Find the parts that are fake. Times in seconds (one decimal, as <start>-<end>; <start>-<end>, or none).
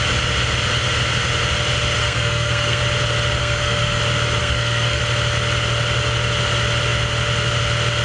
2.0-2.8; 3.4-4.0; 4.4-5.0